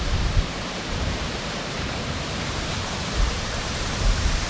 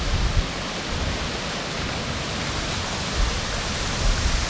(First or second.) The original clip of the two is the second